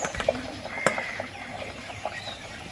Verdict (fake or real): fake